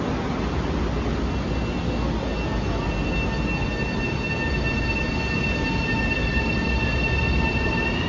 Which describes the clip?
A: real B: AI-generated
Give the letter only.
A